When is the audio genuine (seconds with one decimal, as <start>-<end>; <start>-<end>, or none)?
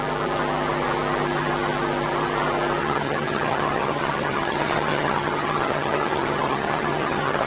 0.0-2.8